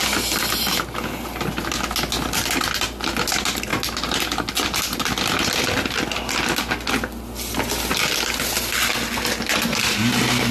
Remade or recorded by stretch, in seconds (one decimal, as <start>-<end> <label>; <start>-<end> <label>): 0.0-10.5 recorded